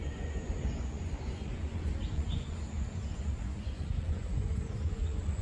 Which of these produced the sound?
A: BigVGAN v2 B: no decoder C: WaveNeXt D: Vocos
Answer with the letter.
D